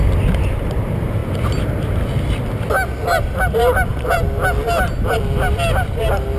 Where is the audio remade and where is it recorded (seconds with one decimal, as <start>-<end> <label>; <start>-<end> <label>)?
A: 0.0-6.4 recorded